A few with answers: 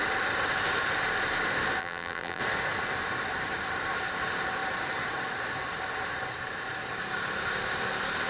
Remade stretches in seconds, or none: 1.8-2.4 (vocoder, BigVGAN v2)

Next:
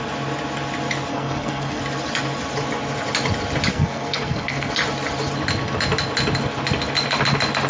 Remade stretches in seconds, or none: 1.1-1.8 (codec, SNAC); 3.7-4.7

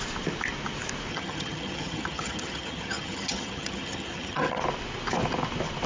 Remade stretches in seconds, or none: 1.1-4.6 (vocoder, HiFi-GAN)

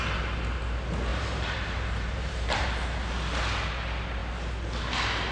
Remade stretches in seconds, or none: 1.1-2.7 (vocoder, BigVGAN v2)

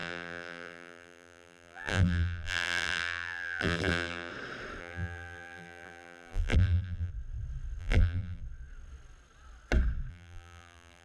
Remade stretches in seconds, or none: 0.0-4.3 (vocoder, BigVGAN v2); 4.8-7.1; 7.8-8.4; 10.1-11.0

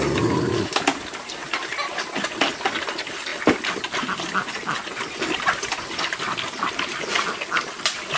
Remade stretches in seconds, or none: none

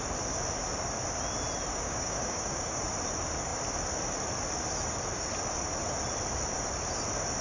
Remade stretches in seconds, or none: 1.7-2.8 (codec, DAC)

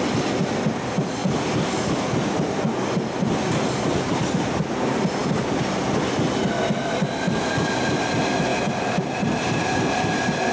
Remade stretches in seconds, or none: 8.5-9.7 (vocoder, BigVGAN v2)